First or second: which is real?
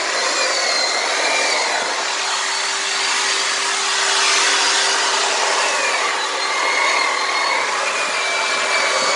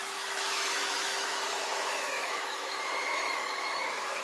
first